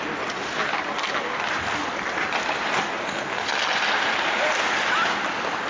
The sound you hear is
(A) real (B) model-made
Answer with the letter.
A